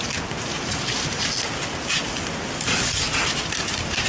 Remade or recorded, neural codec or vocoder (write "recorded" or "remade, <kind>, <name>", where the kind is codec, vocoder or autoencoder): recorded